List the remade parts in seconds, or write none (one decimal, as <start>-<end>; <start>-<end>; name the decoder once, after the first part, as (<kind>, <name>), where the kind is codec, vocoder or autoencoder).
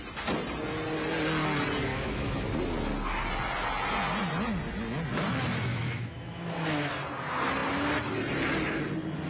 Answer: 1.9-2.5 (autoencoder, DAC-VAE); 5.7-6.9